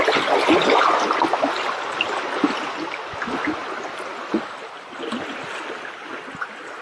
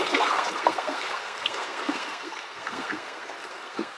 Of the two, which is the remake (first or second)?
second